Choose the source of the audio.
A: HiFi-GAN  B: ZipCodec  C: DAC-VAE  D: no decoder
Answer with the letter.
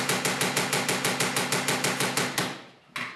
D